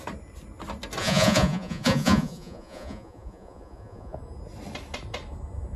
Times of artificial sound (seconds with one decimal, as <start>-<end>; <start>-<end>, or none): 1.0-4.2